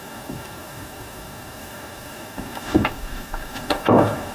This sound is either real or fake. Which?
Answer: fake